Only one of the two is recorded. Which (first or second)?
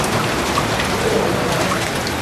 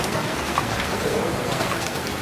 first